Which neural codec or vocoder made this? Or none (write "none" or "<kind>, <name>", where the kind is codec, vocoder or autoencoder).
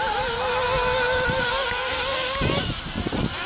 none